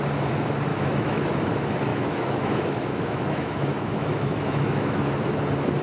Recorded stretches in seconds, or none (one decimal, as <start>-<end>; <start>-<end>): 0.0-0.7; 1.3-1.9; 5.1-5.8

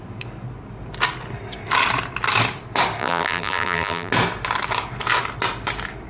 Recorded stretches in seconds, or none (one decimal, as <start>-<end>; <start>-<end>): 0.0-3.0; 4.1-6.1